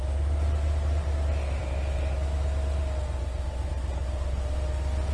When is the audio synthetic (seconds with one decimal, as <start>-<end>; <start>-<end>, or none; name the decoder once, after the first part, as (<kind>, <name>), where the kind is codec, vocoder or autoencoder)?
none

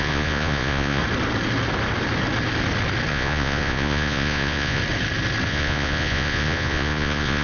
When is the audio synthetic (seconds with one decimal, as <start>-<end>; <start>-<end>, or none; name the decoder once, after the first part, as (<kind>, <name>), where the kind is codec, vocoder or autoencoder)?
0.0-1.0 (vocoder, Vocos); 3.1-4.8; 5.5-7.4

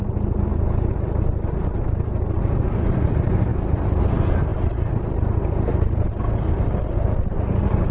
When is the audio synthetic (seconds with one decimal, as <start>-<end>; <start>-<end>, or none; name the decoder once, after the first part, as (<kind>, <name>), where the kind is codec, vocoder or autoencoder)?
none

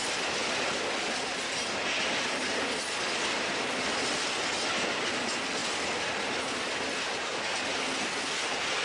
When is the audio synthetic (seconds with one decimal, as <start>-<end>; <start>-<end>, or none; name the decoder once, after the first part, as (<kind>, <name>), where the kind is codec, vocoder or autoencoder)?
none

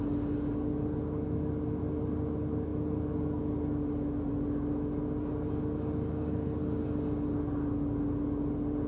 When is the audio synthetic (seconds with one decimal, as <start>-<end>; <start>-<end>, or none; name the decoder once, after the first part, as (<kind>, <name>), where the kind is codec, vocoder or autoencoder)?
none

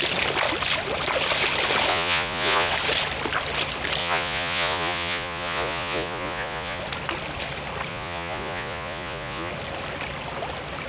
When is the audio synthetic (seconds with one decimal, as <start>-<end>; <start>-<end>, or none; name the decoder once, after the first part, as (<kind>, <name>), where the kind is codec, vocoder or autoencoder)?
1.9-2.7 (vocoder, Vocos); 4.0-6.8; 7.9-9.5

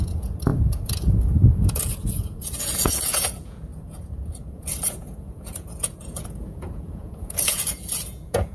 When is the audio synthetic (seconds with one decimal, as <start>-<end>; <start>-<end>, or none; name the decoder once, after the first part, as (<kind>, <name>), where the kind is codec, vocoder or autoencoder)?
0.0-8.5 (vocoder, Vocos)